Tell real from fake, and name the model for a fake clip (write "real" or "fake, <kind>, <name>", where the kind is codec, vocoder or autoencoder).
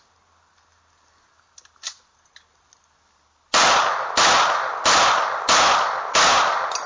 real